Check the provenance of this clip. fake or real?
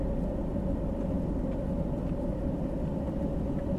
fake